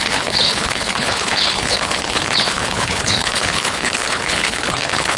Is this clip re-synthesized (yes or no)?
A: yes